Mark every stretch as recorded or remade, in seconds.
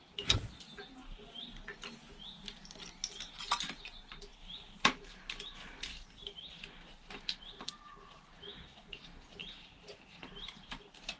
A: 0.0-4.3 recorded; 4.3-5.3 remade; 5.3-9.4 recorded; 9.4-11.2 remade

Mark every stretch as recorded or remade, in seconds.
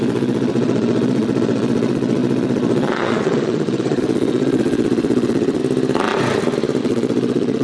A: 0.0-5.6 remade; 5.6-6.8 recorded; 6.8-7.6 remade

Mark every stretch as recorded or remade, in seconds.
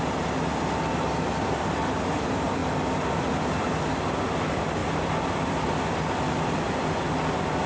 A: 0.0-7.7 recorded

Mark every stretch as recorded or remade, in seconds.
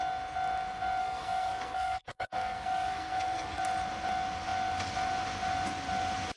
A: 0.0-1.0 recorded; 1.0-3.6 remade; 3.6-6.4 recorded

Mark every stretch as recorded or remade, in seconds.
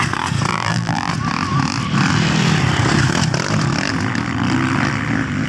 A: 0.0-0.5 recorded; 0.5-1.1 remade; 1.1-5.5 recorded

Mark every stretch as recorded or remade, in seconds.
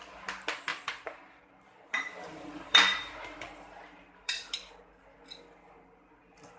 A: 0.0-0.7 recorded; 0.7-4.7 remade; 4.7-6.6 recorded